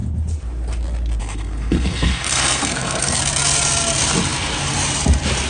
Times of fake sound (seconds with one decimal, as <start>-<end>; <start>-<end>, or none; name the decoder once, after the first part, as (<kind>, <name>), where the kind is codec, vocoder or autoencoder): 1.2-3.2 (codec, SNAC)